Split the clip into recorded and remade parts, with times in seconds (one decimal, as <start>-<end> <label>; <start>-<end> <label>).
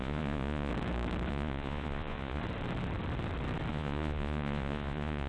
0.0-0.7 remade; 0.7-1.3 recorded; 1.3-2.4 remade; 2.4-3.7 recorded; 3.7-5.3 remade